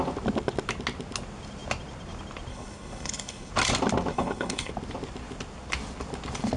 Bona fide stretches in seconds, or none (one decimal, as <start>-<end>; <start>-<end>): 0.0-2.5; 3.5-4.1; 4.7-6.6